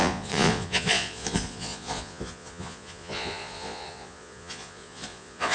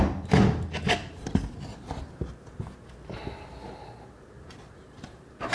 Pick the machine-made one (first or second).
first